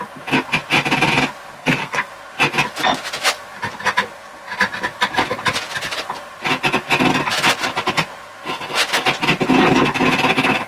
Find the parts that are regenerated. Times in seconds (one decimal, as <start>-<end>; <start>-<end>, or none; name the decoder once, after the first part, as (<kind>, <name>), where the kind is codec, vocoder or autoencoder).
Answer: 1.6-2.1 (codec, SNAC)